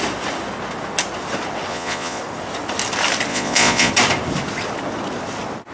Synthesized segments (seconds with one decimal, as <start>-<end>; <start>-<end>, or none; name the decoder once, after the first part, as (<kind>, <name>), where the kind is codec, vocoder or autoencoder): 1.7-2.2 (vocoder, Vocos); 3.3-3.9